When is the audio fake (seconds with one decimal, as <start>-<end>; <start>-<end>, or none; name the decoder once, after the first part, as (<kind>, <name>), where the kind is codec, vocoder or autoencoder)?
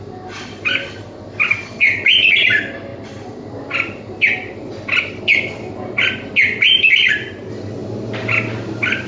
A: none